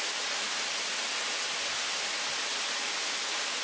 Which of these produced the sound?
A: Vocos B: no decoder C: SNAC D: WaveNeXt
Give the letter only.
B